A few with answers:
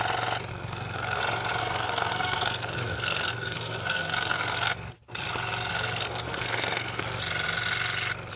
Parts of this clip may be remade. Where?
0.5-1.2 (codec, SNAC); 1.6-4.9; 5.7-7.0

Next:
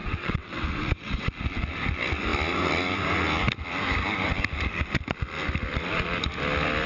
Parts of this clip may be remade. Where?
0.0-1.3 (vocoder, WaveNeXt)

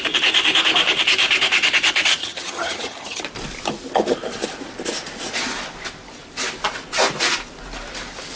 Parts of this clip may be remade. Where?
2.2-3.2 (vocoder, HiFi-GAN)

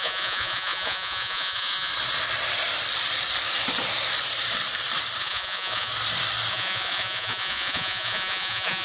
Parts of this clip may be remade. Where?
0.0-1.9 (vocoder, Vocos); 5.2-5.9; 6.5-8.8

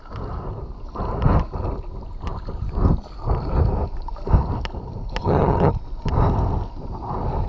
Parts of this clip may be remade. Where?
5.2-5.7 (vocoder, HiFi-GAN)

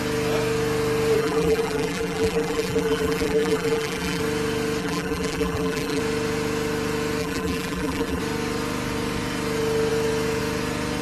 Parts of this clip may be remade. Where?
1.2-4.2 (vocoder, BigVGAN v2); 4.8-6.0; 7.2-8.2

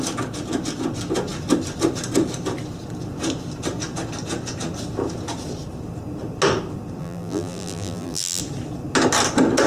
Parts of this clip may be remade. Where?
7.0-8.4 (vocoder, BigVGAN v2)